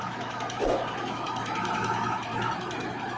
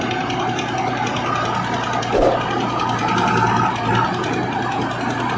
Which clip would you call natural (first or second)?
second